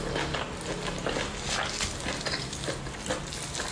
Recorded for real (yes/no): yes